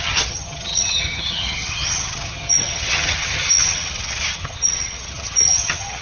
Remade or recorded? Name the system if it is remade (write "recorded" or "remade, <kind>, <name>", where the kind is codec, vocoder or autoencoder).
remade, vocoder, HiFi-GAN